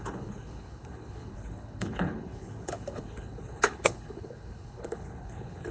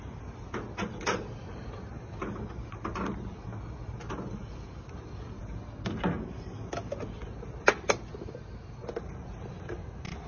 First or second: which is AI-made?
first